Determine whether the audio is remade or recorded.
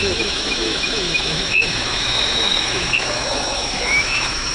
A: remade